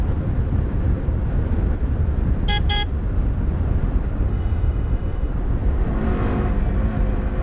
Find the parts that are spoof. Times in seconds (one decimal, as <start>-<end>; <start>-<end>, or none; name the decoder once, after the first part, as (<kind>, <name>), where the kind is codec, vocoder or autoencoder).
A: 4.3-5.3 (autoencoder, DAC-VAE)